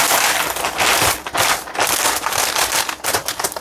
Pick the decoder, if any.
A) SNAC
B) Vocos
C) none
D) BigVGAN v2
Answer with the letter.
C